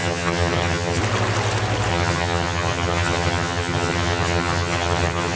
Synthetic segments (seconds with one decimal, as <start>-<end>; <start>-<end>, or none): 0.0-1.0; 1.9-5.4